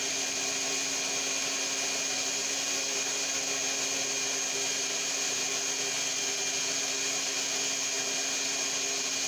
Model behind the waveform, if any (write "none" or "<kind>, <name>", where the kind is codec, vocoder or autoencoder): none